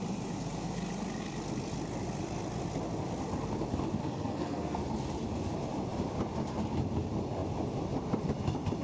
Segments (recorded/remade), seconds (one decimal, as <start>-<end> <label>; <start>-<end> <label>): 0.0-4.0 recorded; 4.0-4.8 remade; 4.8-8.8 recorded